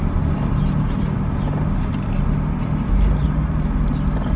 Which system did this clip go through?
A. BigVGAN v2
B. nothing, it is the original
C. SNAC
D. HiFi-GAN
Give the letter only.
B